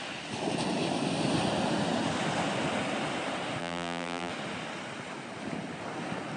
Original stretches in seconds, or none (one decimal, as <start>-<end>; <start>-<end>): 0.0-3.6; 4.3-6.4